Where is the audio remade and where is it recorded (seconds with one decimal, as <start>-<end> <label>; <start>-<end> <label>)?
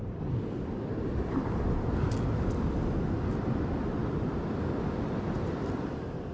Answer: 0.0-0.9 remade; 0.9-6.3 recorded